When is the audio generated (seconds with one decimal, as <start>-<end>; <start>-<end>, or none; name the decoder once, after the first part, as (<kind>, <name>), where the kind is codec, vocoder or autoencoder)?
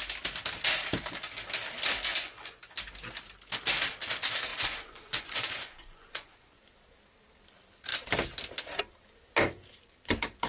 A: 2.1-2.6 (vocoder, Vocos); 4.5-6.6